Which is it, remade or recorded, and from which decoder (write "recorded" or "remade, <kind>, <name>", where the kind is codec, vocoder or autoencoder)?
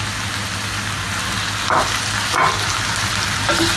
recorded